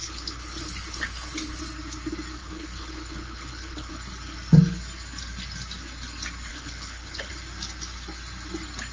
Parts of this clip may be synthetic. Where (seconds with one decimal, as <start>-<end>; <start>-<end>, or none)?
0.0-1.6; 2.4-3.9; 6.5-7.3